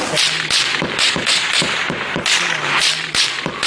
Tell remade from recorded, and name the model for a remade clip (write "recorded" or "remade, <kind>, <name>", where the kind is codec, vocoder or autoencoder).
recorded